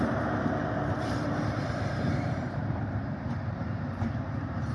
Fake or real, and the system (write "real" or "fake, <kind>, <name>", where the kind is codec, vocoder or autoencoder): fake, vocoder, BigVGAN v2